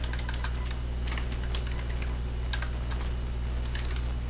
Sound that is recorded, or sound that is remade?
recorded